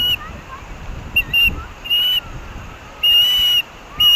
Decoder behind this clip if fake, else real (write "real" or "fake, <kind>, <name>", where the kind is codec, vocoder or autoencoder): real